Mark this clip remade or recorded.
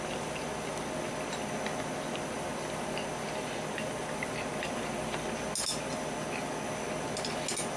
recorded